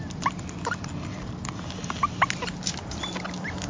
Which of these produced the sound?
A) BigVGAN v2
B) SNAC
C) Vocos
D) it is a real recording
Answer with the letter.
D